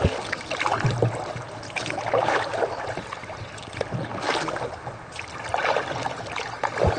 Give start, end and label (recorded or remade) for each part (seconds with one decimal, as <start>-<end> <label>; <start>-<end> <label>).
0.0-7.0 recorded